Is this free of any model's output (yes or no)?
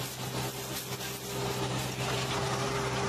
yes